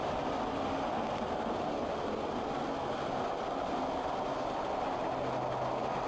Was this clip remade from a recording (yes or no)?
no